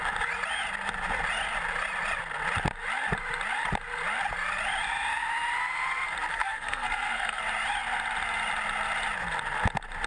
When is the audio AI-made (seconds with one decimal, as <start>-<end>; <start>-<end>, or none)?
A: 6.3-7.4